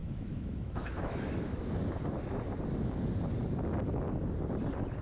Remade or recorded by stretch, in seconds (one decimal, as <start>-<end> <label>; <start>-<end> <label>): 0.0-1.7 remade; 1.7-5.0 recorded